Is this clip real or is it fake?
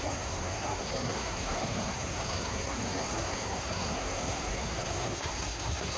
fake